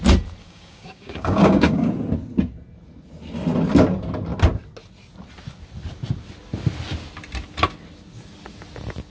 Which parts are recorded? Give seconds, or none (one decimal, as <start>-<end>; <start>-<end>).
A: 0.0-0.4; 1.9-9.1